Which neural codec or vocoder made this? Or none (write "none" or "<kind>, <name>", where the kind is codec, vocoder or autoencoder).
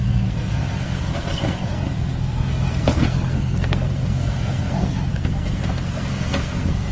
codec, SNAC